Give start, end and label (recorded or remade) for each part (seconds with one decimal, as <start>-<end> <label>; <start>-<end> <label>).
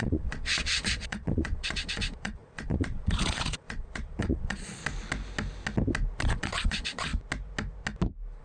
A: 0.0-4.8 remade; 4.8-6.2 recorded; 6.2-7.1 remade; 7.1-8.4 recorded